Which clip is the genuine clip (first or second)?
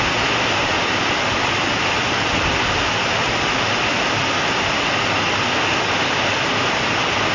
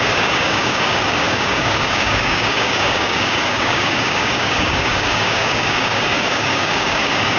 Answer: first